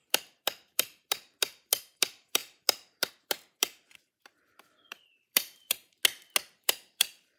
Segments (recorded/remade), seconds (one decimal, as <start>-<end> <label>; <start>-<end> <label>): 0.0-6.0 remade; 6.0-6.6 recorded; 6.6-7.4 remade